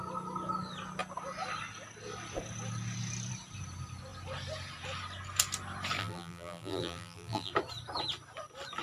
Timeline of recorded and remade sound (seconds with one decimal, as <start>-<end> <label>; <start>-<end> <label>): 0.0-6.0 recorded; 6.0-7.5 remade; 7.5-8.8 recorded